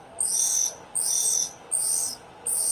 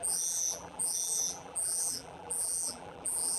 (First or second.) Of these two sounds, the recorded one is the first